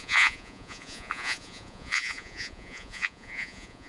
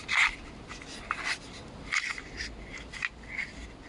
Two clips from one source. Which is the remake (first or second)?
first